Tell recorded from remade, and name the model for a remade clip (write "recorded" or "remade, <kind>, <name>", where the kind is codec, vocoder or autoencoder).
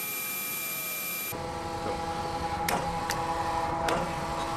recorded